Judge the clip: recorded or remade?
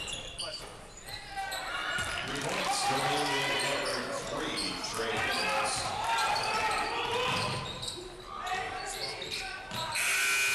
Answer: recorded